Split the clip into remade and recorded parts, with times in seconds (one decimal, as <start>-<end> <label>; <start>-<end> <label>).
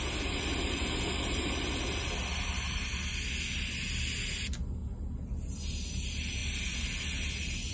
0.0-7.7 recorded